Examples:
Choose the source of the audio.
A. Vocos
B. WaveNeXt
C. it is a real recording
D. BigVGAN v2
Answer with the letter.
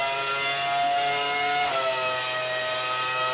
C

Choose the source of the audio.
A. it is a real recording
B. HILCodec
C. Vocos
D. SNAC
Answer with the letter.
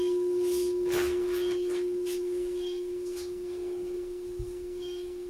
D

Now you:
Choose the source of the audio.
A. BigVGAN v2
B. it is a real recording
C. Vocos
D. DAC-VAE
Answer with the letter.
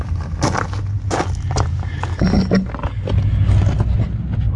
B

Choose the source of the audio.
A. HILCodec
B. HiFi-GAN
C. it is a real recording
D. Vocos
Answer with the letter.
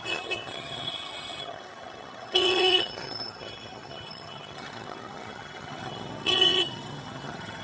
B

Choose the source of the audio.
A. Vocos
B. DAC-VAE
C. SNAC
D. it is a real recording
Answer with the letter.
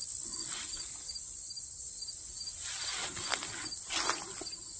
D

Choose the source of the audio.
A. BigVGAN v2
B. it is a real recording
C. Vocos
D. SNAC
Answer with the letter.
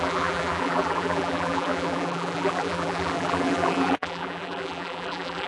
A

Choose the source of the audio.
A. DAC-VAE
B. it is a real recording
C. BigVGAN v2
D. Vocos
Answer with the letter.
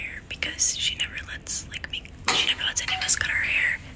B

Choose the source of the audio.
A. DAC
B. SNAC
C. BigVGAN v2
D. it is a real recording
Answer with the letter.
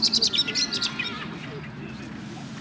D